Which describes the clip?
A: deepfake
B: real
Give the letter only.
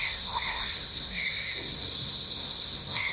A